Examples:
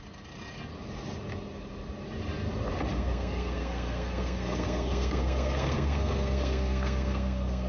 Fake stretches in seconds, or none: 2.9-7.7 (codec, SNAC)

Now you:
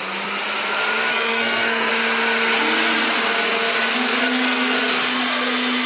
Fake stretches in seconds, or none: 1.1-1.9 (codec, SNAC); 4.2-4.8

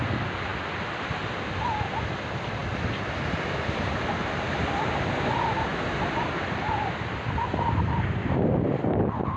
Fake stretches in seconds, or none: 8.2-8.8 (vocoder, BigVGAN v2)